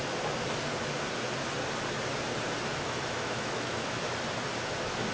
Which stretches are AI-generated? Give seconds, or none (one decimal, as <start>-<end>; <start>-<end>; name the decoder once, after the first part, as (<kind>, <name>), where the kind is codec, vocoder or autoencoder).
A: 2.7-4.0 (autoencoder, DAC-VAE)